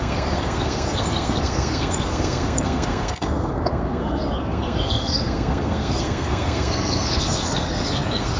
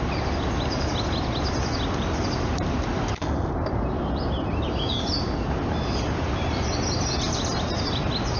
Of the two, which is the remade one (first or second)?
first